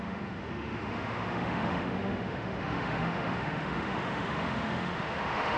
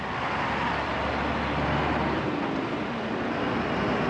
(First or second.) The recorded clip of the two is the second